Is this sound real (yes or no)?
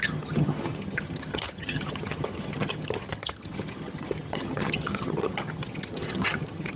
no